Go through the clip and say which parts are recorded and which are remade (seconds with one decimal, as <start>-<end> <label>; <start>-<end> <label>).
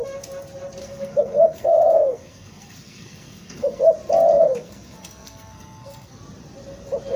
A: 0.0-0.8 recorded; 0.8-3.8 remade; 3.8-4.3 recorded; 4.3-6.2 remade; 6.2-7.2 recorded